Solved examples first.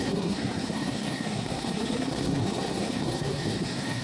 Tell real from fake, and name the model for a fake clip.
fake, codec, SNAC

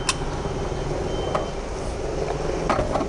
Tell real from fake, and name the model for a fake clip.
real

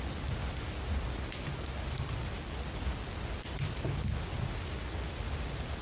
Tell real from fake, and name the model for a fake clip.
real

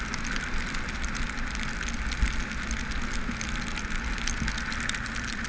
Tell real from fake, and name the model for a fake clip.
real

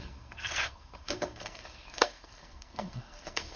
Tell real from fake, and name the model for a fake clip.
fake, codec, SNAC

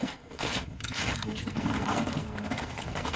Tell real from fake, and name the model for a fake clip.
fake, codec, SNAC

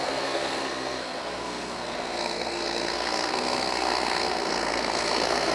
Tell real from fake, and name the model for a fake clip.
fake, codec, SNAC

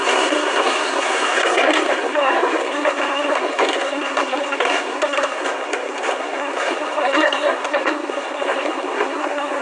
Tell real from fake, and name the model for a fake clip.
fake, codec, SNAC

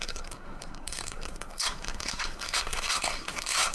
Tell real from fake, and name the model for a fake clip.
fake, codec, SNAC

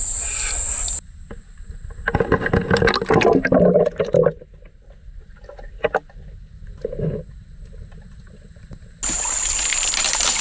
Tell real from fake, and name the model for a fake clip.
real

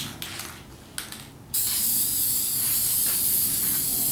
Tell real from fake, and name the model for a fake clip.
real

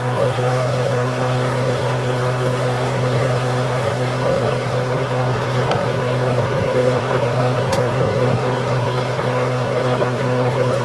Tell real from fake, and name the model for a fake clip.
fake, codec, SNAC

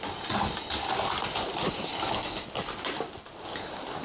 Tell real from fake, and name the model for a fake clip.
real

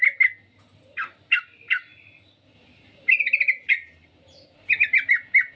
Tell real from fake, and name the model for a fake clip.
real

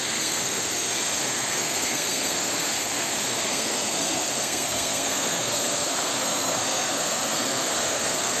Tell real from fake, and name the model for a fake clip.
fake, codec, SNAC